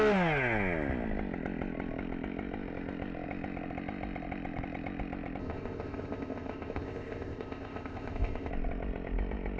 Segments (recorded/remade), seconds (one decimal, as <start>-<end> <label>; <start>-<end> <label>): 0.0-5.4 recorded; 5.4-8.5 remade; 8.5-9.6 recorded